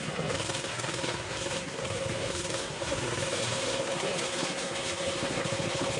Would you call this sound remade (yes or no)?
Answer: yes